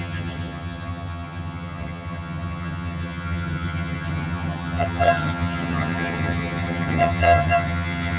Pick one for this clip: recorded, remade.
remade